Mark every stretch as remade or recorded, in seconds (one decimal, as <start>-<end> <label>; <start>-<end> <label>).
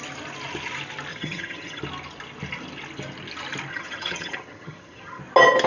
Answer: 0.0-1.1 recorded; 1.1-1.8 remade; 1.8-3.7 recorded; 3.7-5.2 remade; 5.2-5.7 recorded